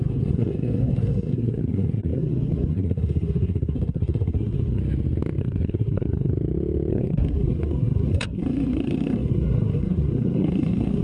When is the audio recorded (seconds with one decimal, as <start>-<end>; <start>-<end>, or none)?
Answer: 4.8-5.4; 6.3-6.9